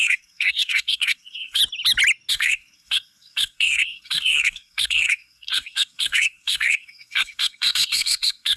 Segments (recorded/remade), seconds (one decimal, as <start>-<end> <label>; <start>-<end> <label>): 0.0-1.6 remade; 1.6-2.3 recorded; 2.3-8.6 remade